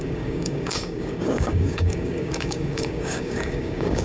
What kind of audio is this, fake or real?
fake